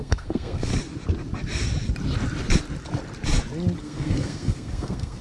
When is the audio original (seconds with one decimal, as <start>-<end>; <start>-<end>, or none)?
0.7-3.8